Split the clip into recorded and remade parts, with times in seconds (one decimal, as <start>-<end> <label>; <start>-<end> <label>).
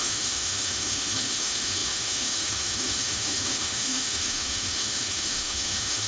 0.0-6.1 remade